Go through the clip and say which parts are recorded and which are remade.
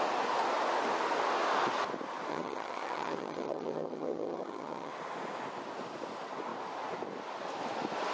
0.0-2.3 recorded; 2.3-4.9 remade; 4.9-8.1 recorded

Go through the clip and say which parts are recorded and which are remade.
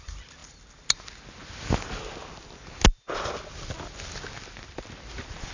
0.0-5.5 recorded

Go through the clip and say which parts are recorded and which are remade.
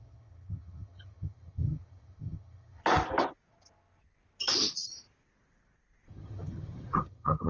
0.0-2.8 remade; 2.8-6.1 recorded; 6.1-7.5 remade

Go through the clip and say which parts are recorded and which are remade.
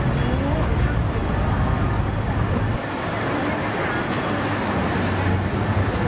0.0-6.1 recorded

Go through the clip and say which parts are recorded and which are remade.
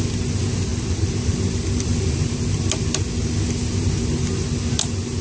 0.0-5.2 recorded